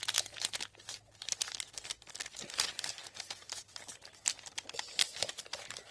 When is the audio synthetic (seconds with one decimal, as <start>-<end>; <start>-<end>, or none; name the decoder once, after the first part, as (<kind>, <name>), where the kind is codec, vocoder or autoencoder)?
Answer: none